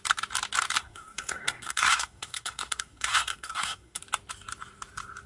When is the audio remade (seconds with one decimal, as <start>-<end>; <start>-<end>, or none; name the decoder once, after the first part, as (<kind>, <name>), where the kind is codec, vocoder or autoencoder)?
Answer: 0.8-4.0 (codec, SNAC)